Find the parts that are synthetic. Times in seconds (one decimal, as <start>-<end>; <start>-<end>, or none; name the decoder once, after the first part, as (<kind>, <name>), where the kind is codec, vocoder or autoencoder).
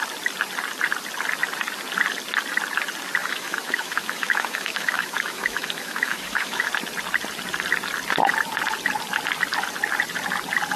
3.2-6.7 (autoencoder, DAC-VAE)